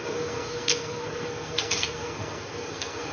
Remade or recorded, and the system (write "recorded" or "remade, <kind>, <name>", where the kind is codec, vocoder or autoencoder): remade, codec, SNAC